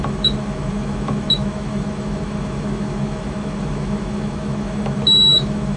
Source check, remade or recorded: remade